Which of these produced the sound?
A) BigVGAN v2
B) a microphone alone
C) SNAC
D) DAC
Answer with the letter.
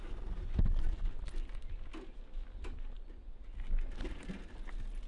B